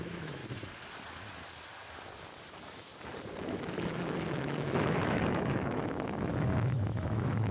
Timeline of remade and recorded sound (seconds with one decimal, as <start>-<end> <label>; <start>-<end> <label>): 0.0-0.4 remade; 0.4-2.4 recorded; 2.4-2.9 remade; 2.9-3.4 recorded; 3.4-7.5 remade

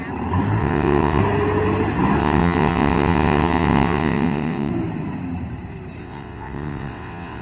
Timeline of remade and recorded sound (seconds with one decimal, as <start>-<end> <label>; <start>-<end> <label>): 0.0-0.6 recorded; 0.6-1.2 remade; 1.2-2.2 recorded; 2.2-4.7 remade; 4.7-6.0 recorded; 6.0-7.4 remade